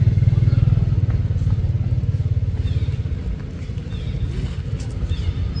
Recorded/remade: recorded